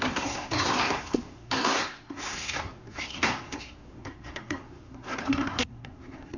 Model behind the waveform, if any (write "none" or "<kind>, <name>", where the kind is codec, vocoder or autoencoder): codec, SNAC